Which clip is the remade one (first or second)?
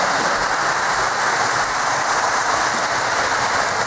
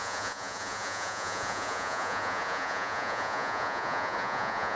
second